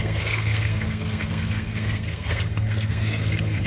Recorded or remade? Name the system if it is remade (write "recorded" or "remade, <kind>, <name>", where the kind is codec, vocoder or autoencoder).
remade, codec, SNAC